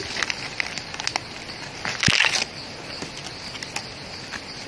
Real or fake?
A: real